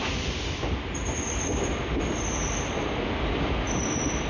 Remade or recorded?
remade